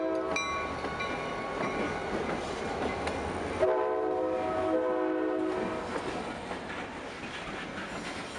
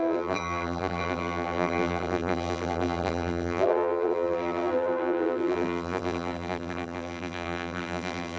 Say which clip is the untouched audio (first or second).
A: first